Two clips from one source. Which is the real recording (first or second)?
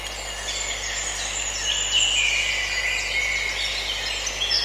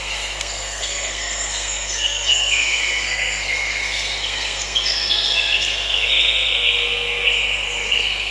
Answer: first